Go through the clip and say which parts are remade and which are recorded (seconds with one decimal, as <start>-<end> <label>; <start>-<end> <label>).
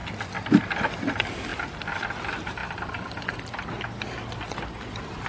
0.0-5.3 recorded